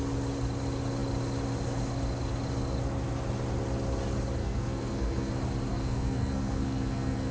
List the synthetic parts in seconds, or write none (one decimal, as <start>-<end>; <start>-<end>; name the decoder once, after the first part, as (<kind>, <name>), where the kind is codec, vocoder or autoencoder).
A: 4.4-5.3 (codec, SNAC); 5.7-7.3